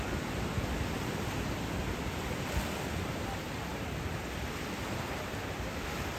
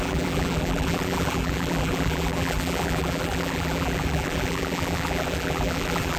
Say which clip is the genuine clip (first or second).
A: first